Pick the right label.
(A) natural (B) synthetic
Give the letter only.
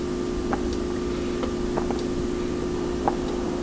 A